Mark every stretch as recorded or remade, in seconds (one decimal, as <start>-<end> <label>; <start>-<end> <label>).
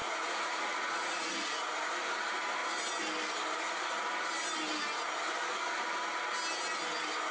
0.0-1.5 remade; 1.5-7.3 recorded